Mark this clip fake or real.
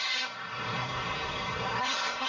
fake